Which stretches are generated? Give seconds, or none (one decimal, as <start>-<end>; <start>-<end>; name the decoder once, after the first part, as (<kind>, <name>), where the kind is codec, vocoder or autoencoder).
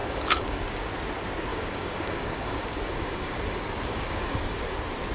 0.0-0.9 (codec, DAC); 1.5-4.6